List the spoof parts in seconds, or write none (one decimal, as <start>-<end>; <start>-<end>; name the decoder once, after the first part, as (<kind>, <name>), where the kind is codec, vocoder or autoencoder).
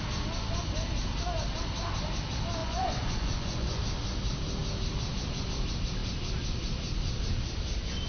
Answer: 2.6-3.8 (vocoder, Vocos)